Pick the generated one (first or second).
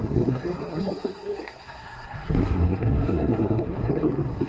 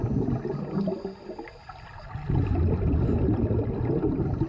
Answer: first